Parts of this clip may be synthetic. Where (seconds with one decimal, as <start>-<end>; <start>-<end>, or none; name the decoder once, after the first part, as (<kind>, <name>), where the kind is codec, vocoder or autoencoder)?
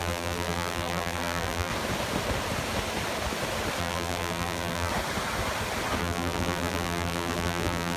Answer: 0.0-1.7 (vocoder, BigVGAN v2); 3.8-4.9; 6.0-8.0